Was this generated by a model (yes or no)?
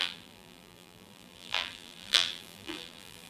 yes